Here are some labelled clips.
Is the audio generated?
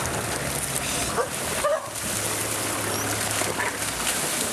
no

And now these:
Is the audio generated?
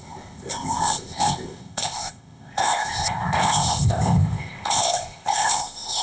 yes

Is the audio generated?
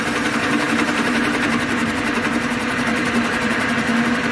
yes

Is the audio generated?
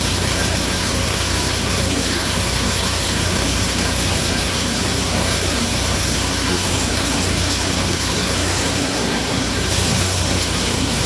yes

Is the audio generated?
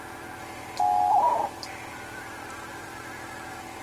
no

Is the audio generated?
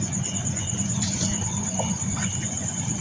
yes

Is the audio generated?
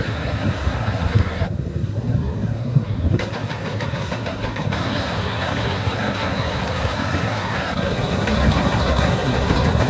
yes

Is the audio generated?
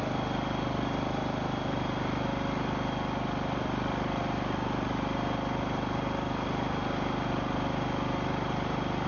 no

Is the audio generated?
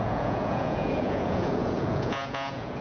yes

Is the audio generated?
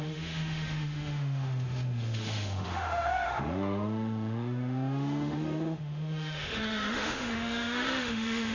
yes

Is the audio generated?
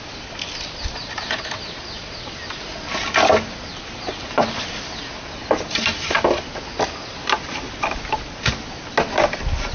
no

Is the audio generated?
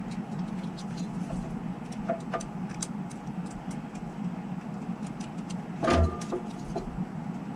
no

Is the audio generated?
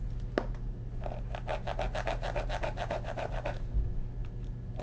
no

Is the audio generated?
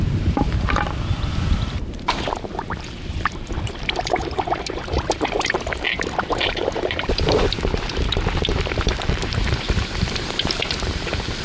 yes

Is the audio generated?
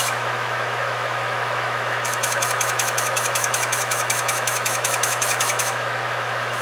yes